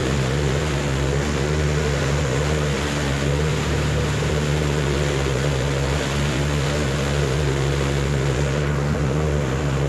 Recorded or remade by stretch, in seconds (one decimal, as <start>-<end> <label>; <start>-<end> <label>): 0.0-3.5 remade; 3.5-4.3 recorded; 4.3-9.9 remade